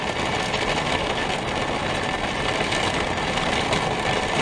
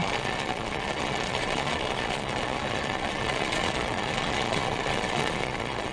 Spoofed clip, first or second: second